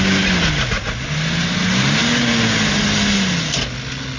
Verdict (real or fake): real